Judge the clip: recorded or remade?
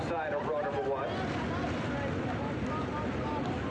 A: recorded